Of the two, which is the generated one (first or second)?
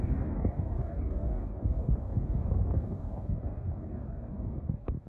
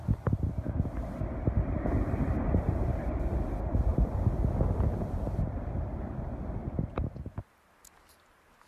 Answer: first